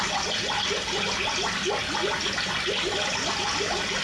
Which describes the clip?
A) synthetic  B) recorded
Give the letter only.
B